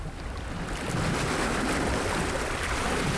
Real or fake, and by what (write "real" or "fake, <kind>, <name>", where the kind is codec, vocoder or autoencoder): real